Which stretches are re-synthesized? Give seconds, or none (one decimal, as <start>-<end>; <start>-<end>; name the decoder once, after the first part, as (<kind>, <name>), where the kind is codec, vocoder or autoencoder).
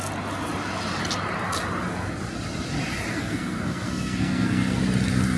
3.1-4.8 (codec, SNAC)